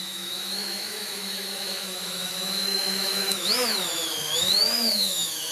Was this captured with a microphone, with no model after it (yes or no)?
no